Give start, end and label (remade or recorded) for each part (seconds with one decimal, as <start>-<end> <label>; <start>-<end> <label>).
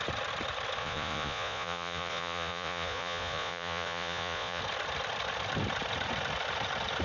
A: 0.0-0.8 recorded; 0.8-4.6 remade; 4.6-7.0 recorded